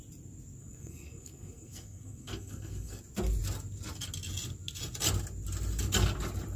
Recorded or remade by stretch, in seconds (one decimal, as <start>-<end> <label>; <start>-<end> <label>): 0.0-0.6 recorded; 0.6-3.0 remade; 3.0-6.6 recorded